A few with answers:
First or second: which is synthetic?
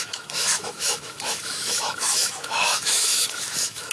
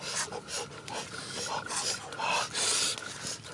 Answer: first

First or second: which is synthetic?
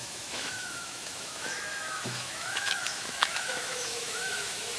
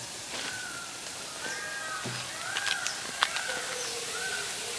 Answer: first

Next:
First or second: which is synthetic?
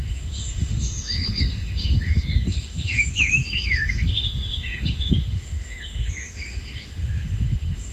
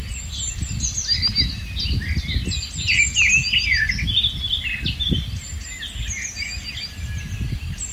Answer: first